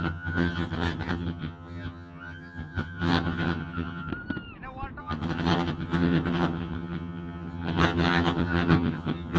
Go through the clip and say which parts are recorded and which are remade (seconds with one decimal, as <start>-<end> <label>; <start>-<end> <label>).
0.0-4.1 remade; 4.1-5.0 recorded; 5.0-9.4 remade